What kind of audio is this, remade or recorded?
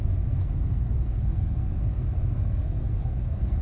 remade